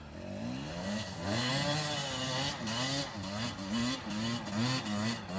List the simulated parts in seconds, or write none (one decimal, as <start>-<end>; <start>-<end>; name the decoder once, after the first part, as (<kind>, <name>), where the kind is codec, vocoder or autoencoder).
0.8-1.5 (codec, SNAC)